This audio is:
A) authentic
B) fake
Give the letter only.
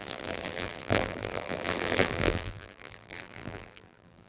B